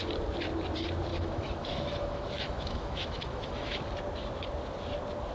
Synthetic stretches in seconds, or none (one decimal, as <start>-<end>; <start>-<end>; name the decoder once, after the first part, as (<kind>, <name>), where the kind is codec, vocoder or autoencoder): 1.1-3.8 (autoencoder, DAC-VAE)